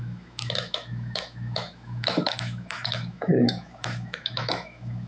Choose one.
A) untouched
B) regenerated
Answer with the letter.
B